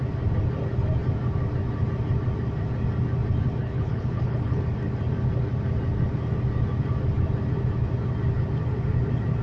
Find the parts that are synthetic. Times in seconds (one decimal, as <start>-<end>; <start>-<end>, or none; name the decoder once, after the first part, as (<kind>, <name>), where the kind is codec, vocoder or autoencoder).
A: 3.6-4.6 (codec, HILCodec)